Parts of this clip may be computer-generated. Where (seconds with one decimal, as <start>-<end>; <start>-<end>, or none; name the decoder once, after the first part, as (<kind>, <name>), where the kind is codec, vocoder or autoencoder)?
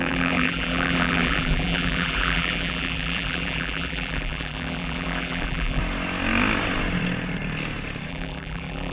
0.0-5.8 (vocoder, BigVGAN v2); 8.1-8.9